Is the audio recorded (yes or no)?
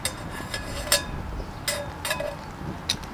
yes